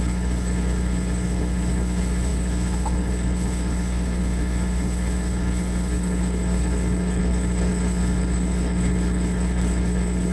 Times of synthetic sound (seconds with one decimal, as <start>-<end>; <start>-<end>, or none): 0.0-10.3